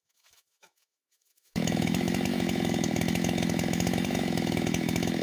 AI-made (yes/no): yes